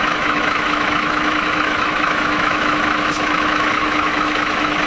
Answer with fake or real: fake